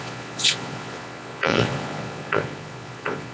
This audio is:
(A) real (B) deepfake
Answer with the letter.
B